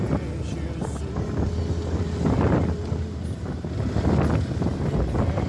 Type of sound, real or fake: real